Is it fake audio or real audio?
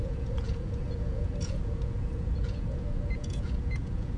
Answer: fake